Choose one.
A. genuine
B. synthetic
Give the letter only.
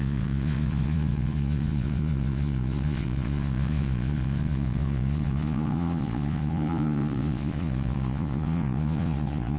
B